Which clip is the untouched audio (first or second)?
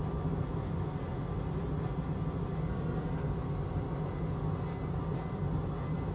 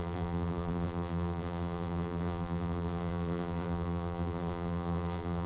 first